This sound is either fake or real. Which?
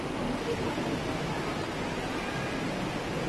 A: real